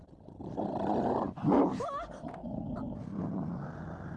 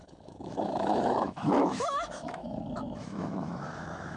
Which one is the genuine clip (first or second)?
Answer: first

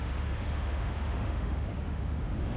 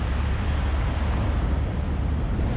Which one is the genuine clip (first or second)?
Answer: second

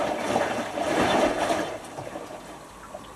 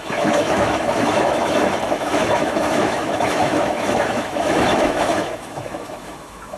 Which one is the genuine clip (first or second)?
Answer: first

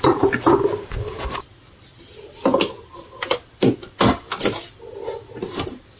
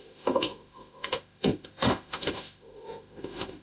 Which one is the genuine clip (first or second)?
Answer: first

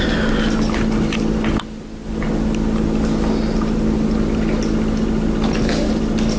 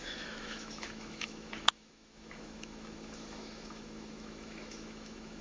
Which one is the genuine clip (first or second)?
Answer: first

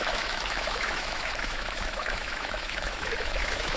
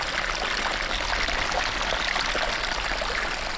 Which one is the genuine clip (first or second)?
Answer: second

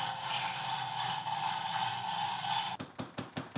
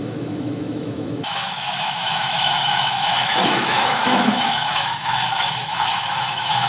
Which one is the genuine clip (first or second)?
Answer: first